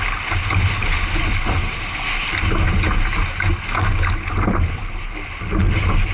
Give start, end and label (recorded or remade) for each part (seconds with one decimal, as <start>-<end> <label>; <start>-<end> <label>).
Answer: 0.0-6.1 recorded